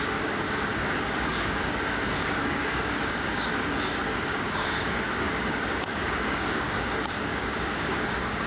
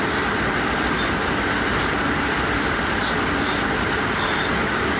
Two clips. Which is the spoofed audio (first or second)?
first